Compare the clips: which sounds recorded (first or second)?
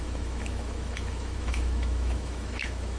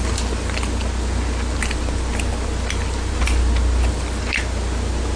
second